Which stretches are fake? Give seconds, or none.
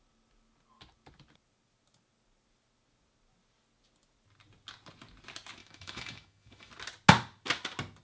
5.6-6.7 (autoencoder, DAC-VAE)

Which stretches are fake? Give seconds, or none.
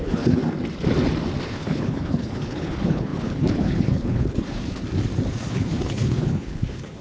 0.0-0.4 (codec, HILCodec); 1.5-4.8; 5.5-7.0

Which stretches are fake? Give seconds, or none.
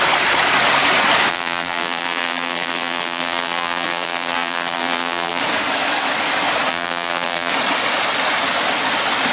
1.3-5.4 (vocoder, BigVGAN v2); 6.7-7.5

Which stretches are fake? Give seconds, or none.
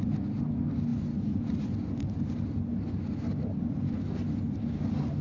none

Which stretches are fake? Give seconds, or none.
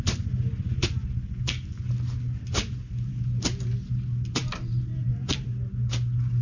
none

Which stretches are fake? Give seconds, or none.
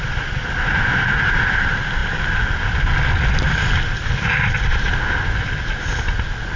none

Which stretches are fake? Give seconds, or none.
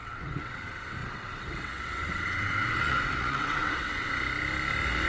0.0-0.6 (vocoder, WaveNeXt); 1.0-4.1